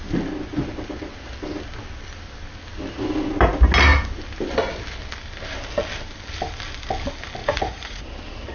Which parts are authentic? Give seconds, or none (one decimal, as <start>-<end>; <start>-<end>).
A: 0.0-7.4; 8.0-8.5